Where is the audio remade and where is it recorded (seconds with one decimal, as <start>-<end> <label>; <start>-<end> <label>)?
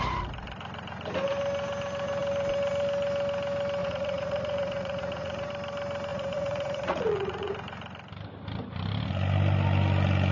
0.0-3.8 recorded; 3.8-5.5 remade; 5.5-6.1 recorded; 6.1-7.5 remade; 7.5-10.3 recorded